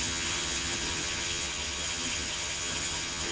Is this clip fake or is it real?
fake